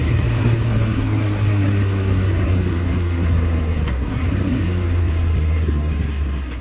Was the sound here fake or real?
fake